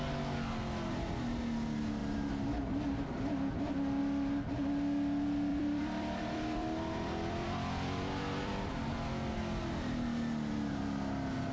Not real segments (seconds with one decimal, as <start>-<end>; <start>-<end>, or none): 5.5-8.5